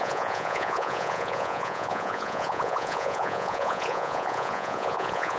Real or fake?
fake